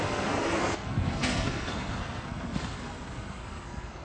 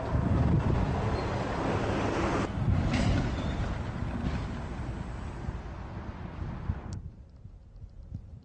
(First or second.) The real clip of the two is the second